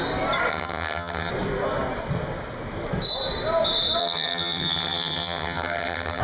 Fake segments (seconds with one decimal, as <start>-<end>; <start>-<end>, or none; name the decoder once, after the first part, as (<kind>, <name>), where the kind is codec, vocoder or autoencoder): 0.5-1.3 (vocoder, HiFi-GAN); 4.0-6.2